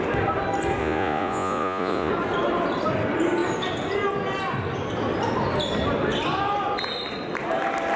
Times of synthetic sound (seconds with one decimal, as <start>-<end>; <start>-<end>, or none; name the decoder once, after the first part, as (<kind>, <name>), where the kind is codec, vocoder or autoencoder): 0.8-2.1 (vocoder, Vocos)